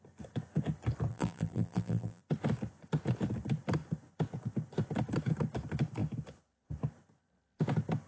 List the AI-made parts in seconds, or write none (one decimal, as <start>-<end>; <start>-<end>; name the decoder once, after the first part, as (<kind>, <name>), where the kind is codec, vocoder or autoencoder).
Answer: 1.1-2.2 (vocoder, BigVGAN v2)